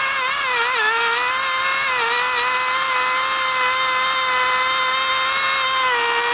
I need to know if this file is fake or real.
real